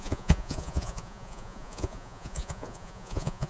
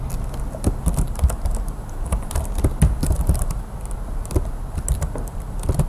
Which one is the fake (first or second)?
first